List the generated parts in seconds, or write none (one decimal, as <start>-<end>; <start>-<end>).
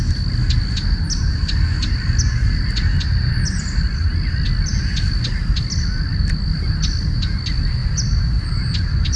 none